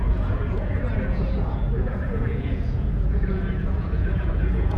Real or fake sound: fake